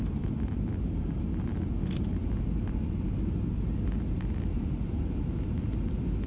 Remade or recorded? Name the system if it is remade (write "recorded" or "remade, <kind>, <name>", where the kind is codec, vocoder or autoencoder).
recorded